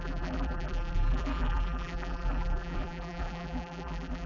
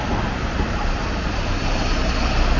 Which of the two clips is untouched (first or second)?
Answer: second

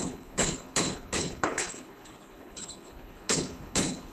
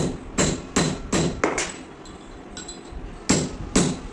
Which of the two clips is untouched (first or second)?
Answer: second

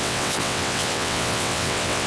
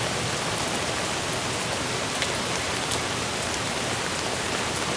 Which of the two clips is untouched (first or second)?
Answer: second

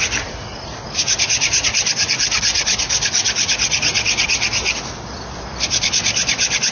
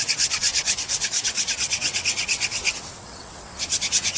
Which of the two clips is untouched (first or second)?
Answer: first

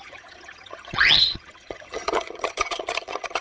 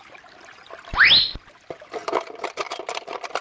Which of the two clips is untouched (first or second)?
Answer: second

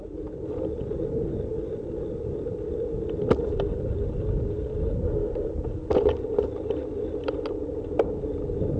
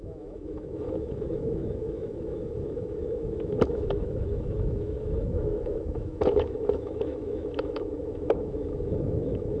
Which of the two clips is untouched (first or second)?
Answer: first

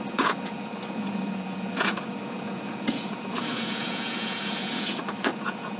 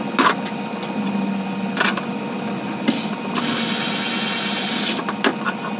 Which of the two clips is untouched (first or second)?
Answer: second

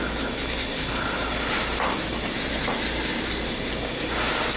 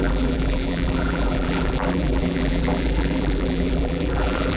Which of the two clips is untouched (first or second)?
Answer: first